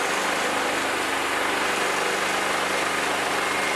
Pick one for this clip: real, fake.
real